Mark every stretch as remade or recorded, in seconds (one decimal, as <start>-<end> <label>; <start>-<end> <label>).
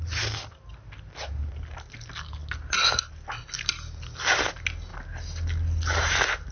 0.0-6.5 recorded